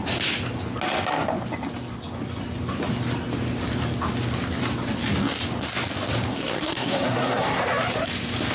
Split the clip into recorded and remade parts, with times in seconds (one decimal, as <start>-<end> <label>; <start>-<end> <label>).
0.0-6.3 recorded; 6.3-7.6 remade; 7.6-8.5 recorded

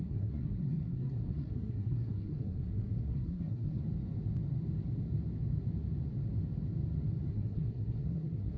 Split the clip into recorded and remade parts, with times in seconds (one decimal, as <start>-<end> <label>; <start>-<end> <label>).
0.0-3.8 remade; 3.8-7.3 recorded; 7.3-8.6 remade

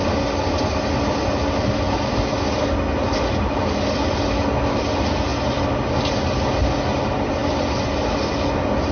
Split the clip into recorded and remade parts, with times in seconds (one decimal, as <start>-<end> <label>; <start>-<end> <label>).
0.0-8.9 recorded